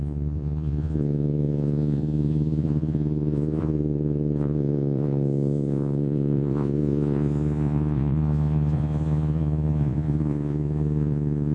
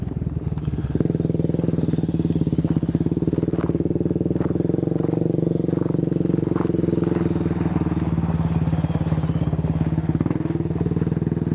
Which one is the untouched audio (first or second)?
second